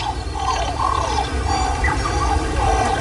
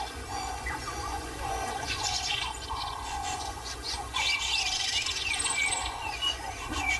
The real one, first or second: first